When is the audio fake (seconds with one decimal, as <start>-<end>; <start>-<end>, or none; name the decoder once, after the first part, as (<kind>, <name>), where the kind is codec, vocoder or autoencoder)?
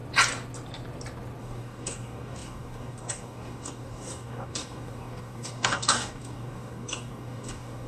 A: 1.4-7.9 (codec, DAC)